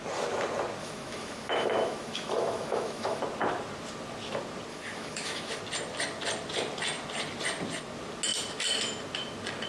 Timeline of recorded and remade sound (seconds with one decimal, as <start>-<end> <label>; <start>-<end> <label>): 0.0-0.8 recorded; 0.8-3.2 remade; 3.2-4.7 recorded; 4.7-5.6 remade; 5.6-9.7 recorded